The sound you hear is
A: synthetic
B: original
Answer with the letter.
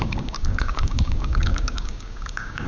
A